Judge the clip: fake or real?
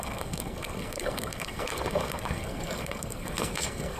fake